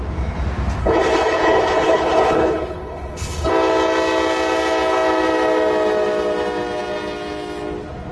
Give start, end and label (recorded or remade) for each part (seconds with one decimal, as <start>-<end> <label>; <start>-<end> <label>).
0.0-0.8 recorded; 0.8-3.5 remade; 3.5-8.1 recorded